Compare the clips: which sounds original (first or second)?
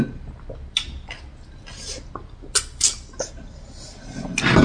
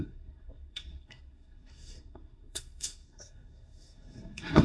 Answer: first